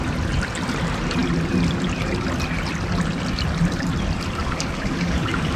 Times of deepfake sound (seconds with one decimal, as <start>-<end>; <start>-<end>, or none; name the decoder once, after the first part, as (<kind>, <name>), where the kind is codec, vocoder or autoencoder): 4.4-5.6 (codec, DAC)